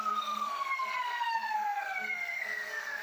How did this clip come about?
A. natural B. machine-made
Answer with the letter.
B